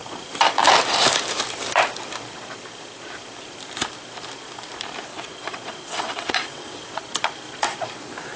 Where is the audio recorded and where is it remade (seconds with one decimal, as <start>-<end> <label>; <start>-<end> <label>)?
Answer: 0.0-5.1 recorded; 5.1-7.0 remade; 7.0-8.4 recorded